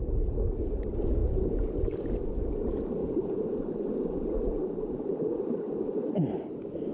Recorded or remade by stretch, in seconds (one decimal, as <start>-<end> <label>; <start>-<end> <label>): 0.0-3.0 recorded; 3.0-6.2 remade; 6.2-6.9 recorded